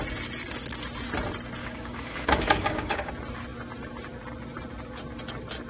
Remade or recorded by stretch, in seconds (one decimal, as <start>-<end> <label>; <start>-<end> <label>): 0.0-1.6 recorded; 1.6-3.1 remade; 3.1-5.7 recorded